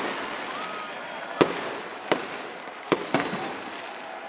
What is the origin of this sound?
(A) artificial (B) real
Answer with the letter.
A